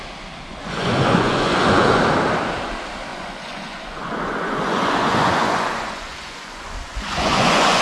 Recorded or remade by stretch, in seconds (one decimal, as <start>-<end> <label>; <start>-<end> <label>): 0.0-0.5 recorded; 0.5-2.0 remade; 2.0-3.1 recorded; 3.1-7.8 remade

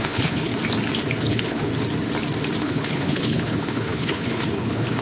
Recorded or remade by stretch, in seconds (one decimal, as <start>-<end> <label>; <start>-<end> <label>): 0.0-0.5 remade; 0.5-1.2 recorded; 1.2-1.7 remade; 1.7-2.6 recorded; 2.6-5.0 remade

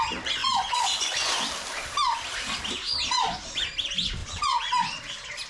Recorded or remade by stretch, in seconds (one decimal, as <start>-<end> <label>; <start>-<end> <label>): 0.0-0.4 recorded; 0.4-1.4 remade; 1.4-4.2 recorded; 4.2-4.7 remade; 4.7-5.5 recorded

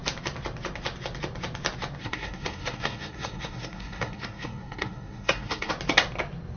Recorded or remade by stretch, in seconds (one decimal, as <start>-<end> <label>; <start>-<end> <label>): 0.0-2.0 recorded; 2.0-5.7 remade; 5.7-6.6 recorded